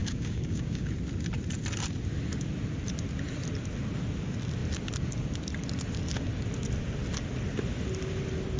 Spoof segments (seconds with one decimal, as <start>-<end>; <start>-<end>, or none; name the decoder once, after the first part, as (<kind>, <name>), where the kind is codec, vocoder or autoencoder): 0.0-0.9 (codec, DAC)